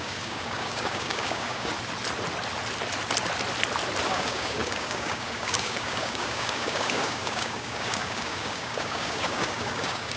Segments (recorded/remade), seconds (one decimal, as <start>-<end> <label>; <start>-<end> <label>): 0.0-1.7 remade; 1.7-4.1 recorded; 4.1-10.2 remade

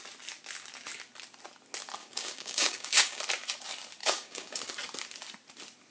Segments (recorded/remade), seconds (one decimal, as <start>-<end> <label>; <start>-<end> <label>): 0.0-2.0 recorded; 2.0-3.2 remade; 3.2-4.0 recorded; 4.0-4.6 remade; 4.6-5.9 recorded

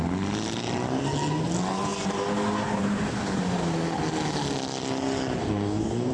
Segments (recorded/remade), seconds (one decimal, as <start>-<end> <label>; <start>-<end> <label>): 0.0-5.4 recorded; 5.4-6.1 remade

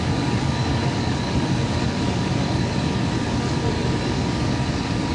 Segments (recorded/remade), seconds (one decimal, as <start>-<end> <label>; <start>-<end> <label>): 0.0-5.1 remade